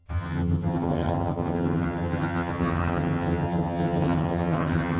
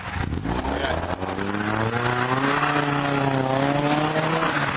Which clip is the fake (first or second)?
first